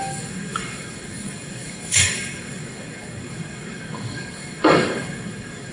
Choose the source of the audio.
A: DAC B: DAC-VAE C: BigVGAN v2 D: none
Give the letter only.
A